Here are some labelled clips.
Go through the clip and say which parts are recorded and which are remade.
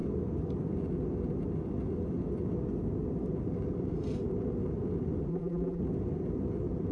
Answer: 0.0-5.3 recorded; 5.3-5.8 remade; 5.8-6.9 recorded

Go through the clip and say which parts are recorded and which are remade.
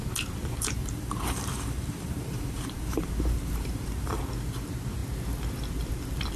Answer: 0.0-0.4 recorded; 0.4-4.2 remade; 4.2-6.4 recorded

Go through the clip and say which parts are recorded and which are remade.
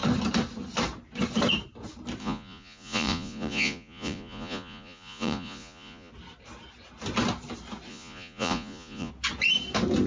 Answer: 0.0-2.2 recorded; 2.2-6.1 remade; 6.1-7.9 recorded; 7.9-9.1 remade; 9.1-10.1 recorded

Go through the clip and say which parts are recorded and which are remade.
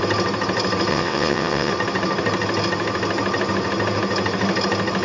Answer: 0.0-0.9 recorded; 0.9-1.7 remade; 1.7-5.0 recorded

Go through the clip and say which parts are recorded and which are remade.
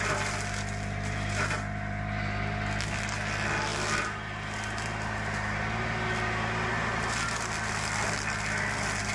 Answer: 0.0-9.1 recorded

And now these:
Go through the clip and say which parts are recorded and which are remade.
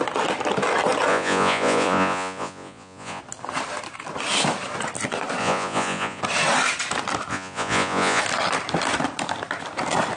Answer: 0.0-1.1 recorded; 1.1-3.2 remade; 3.2-5.4 recorded; 5.4-6.2 remade; 6.2-7.3 recorded; 7.3-8.2 remade; 8.2-10.2 recorded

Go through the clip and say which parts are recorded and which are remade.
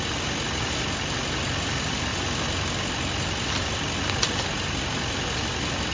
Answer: 0.0-5.9 recorded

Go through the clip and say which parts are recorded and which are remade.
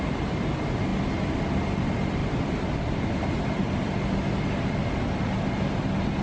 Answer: 0.0-2.2 recorded; 2.2-4.1 remade; 4.1-6.2 recorded